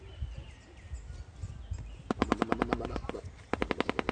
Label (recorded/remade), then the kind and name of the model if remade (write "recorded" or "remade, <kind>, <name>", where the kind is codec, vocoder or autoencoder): recorded